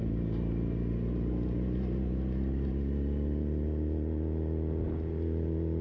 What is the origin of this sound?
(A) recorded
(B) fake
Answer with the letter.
A